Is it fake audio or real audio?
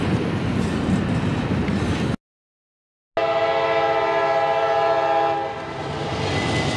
real